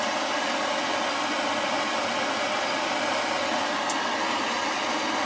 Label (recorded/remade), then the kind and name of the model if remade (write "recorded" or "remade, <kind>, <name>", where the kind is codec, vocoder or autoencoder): recorded